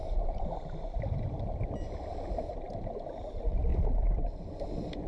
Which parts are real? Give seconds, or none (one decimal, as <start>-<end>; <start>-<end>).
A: 1.4-2.1; 3.0-3.7